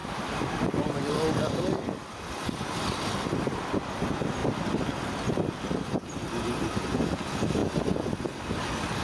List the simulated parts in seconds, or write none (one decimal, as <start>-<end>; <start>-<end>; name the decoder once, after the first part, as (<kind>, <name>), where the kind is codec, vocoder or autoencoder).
0.0-0.9 (vocoder, BigVGAN v2); 4.4-5.4